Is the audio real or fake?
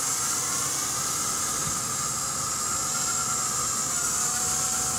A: real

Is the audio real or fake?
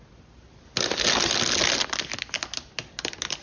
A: real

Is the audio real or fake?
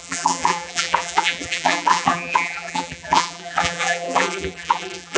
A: fake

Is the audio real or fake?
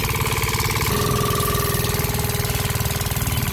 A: real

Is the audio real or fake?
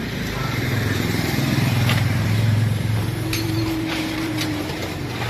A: fake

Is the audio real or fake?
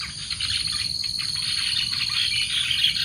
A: real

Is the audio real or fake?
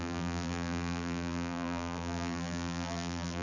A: fake